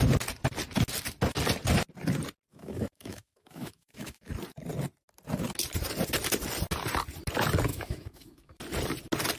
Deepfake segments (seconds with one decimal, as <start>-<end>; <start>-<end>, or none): 2.5-4.3; 7.7-8.5